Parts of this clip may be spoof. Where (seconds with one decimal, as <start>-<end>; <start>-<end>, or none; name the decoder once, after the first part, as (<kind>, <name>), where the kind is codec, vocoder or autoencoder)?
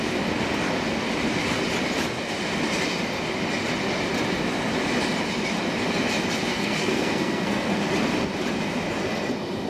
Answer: 6.5-7.8 (codec, SNAC)